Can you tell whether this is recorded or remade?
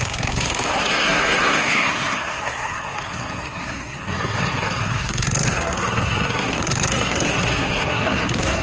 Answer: remade